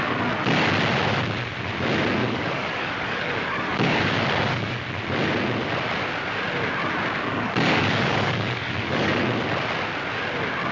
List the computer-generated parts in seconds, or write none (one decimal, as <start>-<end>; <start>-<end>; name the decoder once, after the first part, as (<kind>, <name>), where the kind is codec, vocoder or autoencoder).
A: 2.2-4.8 (codec, DAC); 7.3-9.2